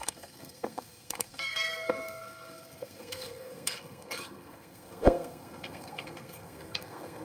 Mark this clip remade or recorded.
remade